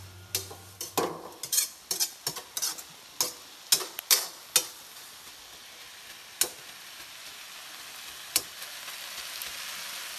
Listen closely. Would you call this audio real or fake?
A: real